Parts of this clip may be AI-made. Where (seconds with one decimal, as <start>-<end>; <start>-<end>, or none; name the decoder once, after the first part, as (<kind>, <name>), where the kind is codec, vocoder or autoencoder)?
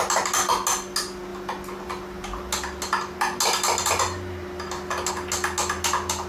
none